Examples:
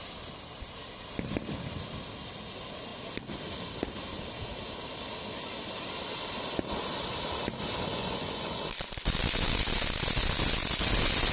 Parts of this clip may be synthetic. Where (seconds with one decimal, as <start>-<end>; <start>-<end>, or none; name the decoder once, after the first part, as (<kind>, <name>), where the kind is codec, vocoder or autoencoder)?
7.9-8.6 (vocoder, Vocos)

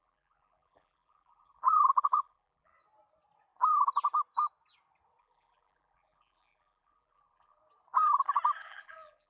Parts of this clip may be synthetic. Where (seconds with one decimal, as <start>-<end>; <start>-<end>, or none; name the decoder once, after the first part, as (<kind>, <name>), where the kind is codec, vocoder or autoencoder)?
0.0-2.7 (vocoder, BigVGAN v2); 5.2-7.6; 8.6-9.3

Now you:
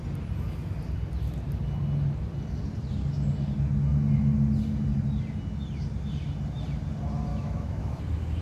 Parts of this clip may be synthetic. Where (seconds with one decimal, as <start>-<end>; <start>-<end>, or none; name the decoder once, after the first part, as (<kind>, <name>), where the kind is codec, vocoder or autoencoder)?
7.3-8.0 (autoencoder, DAC-VAE)